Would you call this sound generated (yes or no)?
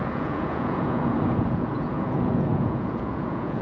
yes